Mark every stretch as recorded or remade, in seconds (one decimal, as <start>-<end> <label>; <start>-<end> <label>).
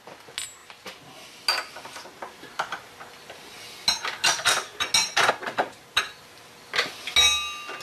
0.0-7.8 recorded